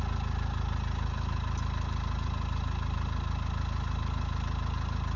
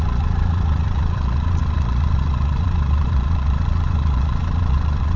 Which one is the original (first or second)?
first